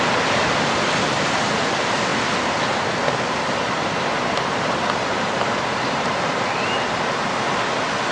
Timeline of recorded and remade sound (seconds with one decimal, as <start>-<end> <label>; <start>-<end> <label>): 0.0-8.1 recorded